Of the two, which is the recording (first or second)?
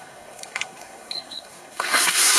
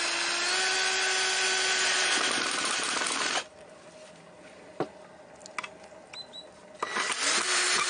second